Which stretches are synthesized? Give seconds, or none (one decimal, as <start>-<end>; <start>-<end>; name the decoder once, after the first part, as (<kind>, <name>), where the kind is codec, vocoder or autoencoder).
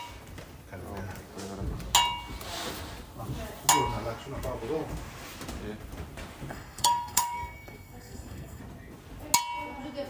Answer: 6.5-8.6 (codec, SNAC)